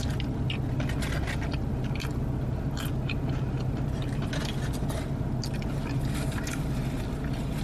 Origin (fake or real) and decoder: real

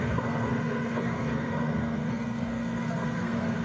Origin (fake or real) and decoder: fake, codec, SNAC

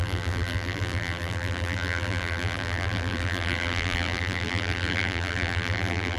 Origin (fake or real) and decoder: fake, vocoder, BigVGAN v2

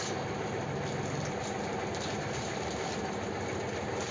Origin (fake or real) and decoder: real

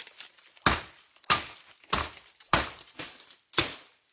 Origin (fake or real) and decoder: fake, vocoder, BigVGAN v2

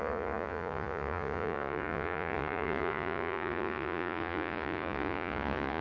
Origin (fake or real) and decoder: fake, vocoder, Vocos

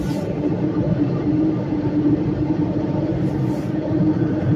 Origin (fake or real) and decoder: fake, vocoder, BigVGAN v2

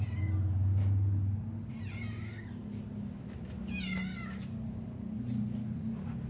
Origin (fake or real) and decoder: real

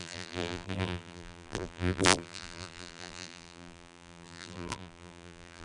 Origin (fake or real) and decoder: fake, vocoder, BigVGAN v2